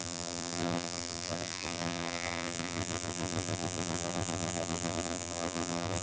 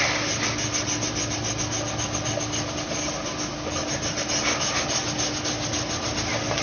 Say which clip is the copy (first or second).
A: first